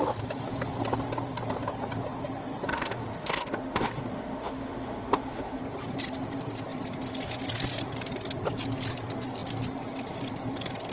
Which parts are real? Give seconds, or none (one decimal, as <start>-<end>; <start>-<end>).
0.0-2.7; 5.6-10.9